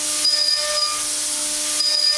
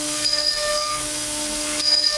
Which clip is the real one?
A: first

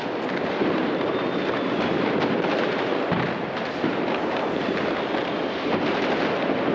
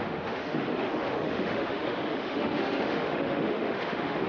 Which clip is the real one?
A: first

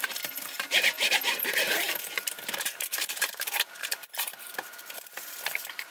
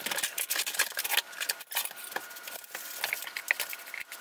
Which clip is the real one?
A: second